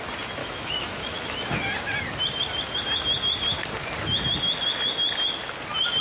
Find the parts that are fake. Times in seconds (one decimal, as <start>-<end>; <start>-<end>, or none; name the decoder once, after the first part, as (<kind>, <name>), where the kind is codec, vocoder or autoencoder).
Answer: 0.4-1.5 (autoencoder, DAC-VAE)